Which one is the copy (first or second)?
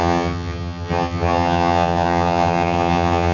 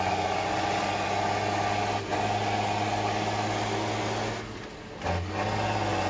first